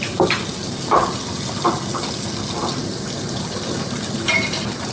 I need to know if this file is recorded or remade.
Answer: recorded